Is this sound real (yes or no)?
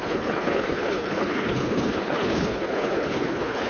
no